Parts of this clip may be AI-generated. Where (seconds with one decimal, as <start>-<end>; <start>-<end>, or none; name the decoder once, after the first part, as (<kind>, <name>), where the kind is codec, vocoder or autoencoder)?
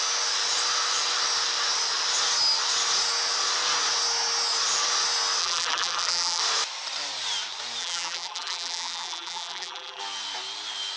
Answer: 5.4-6.4 (vocoder, BigVGAN v2); 7.8-10.0